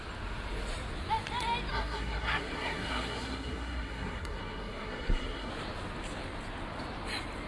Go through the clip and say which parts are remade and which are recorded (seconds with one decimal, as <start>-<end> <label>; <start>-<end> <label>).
0.0-1.7 recorded; 1.7-5.5 remade; 5.5-7.5 recorded